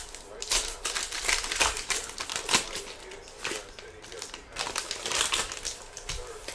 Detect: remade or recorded remade